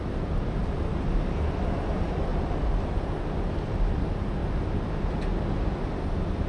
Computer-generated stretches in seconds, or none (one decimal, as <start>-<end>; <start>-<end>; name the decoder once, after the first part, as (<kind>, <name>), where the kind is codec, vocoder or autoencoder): 0.0-2.3 (vocoder, BigVGAN v2); 3.6-4.4